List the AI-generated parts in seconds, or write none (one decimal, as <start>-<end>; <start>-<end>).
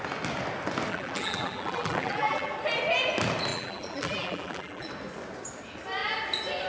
0.9-2.5; 3.5-4.9